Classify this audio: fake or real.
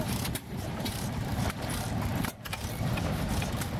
fake